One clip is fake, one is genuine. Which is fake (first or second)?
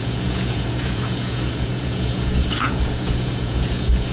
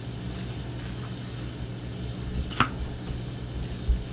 first